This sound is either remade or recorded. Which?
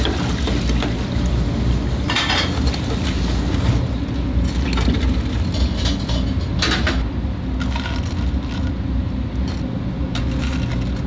recorded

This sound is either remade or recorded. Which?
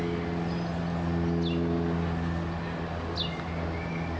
recorded